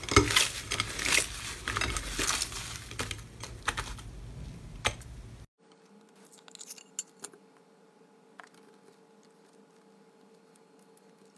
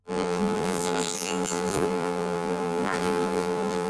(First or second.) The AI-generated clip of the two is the second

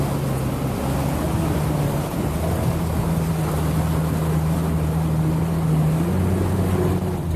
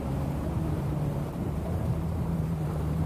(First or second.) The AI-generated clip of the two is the second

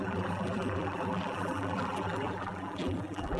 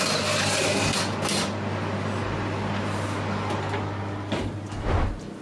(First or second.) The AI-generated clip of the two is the first